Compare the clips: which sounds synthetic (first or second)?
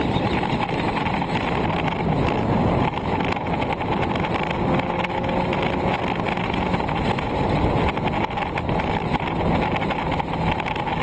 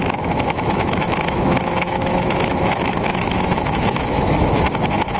second